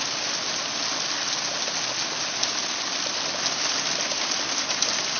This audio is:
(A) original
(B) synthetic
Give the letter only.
A